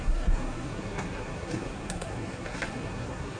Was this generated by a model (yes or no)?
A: yes